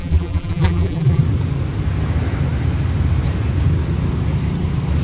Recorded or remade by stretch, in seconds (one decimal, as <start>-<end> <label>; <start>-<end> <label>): 0.0-1.2 remade; 1.2-5.0 recorded